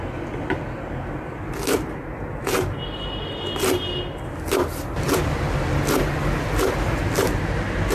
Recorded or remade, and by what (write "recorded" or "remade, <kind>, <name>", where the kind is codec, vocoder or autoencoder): recorded